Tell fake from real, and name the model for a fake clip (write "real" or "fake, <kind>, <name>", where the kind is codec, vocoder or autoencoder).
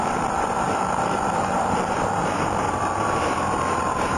fake, vocoder, BigVGAN v2